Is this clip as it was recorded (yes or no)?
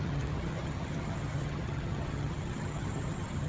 no